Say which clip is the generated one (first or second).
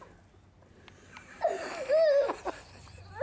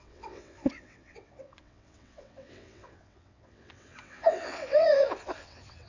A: second